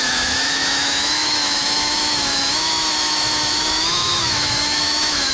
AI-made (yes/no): yes